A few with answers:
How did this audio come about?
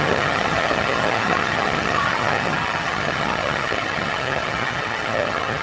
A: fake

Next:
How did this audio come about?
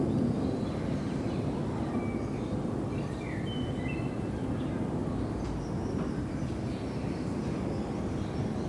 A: real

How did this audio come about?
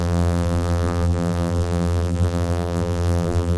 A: fake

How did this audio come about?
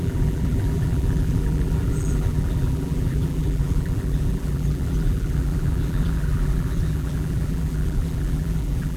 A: fake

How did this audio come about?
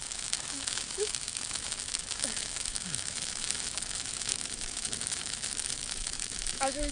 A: fake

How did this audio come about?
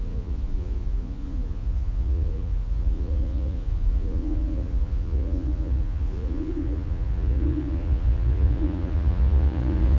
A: fake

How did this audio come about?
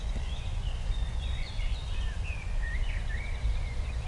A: fake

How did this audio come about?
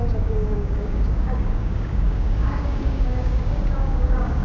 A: fake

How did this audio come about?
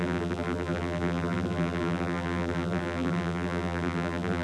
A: fake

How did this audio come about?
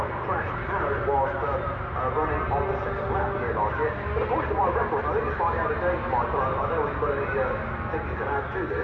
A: real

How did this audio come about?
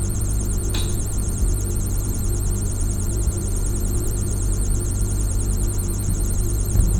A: fake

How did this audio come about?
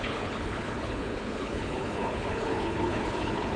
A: fake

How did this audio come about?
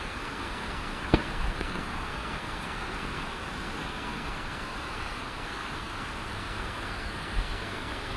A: fake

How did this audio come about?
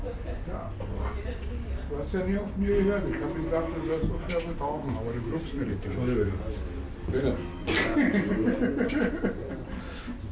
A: real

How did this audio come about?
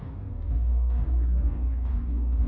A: fake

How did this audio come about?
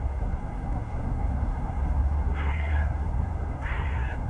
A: fake